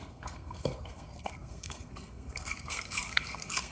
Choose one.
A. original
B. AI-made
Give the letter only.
B